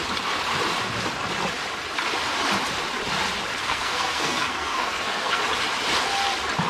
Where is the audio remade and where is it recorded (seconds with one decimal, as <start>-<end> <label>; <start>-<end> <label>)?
0.0-3.6 recorded; 3.6-5.4 remade; 5.4-6.7 recorded